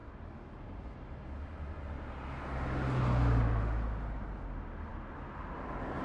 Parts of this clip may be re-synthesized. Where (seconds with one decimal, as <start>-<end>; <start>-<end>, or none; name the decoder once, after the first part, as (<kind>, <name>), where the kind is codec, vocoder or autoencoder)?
none

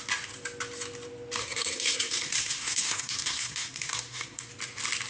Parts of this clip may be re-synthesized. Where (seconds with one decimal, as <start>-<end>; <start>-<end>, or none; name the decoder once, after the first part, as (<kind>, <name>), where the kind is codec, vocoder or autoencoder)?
1.4-4.5 (codec, SNAC)

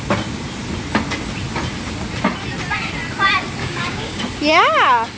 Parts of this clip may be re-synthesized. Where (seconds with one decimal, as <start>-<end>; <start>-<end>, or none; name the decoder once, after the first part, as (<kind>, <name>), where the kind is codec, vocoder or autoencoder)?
3.6-4.2 (codec, DAC)